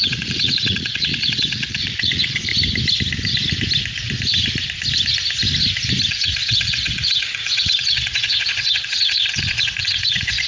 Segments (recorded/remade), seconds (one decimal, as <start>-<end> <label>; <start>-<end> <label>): 0.0-2.5 remade; 2.5-6.1 recorded; 6.1-10.5 remade